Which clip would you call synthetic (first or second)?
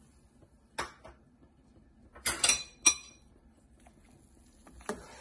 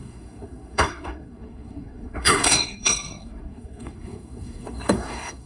second